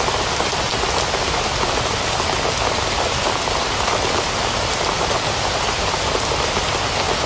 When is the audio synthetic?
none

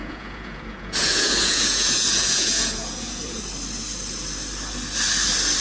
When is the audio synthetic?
0.0-3.4 (vocoder, Vocos)

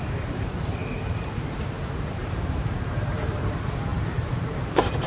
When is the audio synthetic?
0.0-5.1 (vocoder, BigVGAN v2)

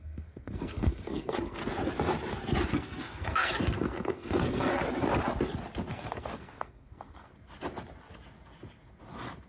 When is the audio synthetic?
0.0-1.6 (codec, SNAC); 2.7-4.8; 5.9-7.3

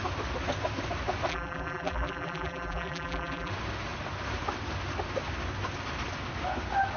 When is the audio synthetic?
1.3-3.5 (vocoder, BigVGAN v2)

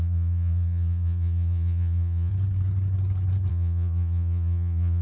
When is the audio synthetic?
0.0-2.3 (vocoder, Vocos); 3.5-5.0

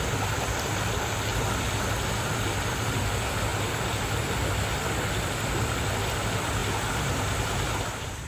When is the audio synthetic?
none